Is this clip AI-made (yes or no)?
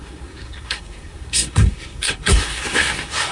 yes